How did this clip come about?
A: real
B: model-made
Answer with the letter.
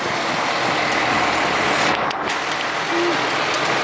A